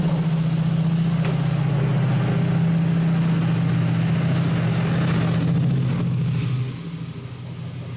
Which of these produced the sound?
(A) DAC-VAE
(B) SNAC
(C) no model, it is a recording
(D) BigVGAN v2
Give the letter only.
C